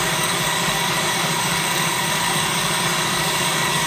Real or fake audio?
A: fake